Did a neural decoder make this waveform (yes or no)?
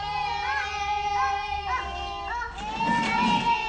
no